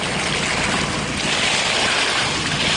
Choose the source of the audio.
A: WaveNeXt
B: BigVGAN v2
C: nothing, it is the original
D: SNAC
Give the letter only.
C